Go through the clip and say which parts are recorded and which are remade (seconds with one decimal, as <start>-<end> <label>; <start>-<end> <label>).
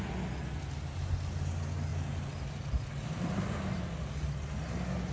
0.0-5.1 recorded